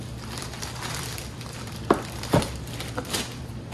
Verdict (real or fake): fake